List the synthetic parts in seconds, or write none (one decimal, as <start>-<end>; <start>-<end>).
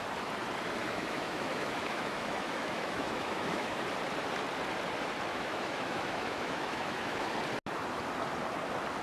0.8-3.8; 5.3-7.3